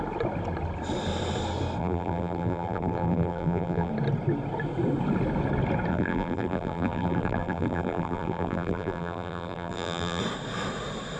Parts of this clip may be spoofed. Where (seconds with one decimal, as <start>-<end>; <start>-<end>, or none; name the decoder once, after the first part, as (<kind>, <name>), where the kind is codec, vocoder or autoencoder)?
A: 1.8-3.9 (vocoder, BigVGAN v2); 5.9-10.2